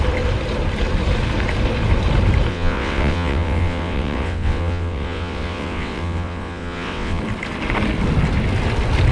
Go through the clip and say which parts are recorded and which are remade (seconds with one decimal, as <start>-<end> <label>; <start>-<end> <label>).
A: 0.0-2.5 recorded; 2.5-7.2 remade; 7.2-9.1 recorded